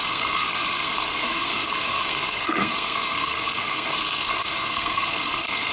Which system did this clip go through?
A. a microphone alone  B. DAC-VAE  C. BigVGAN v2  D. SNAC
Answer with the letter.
D